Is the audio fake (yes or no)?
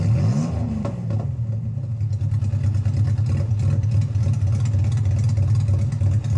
no